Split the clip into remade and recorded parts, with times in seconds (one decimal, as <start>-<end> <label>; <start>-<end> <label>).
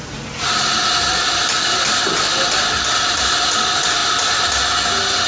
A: 0.0-5.3 recorded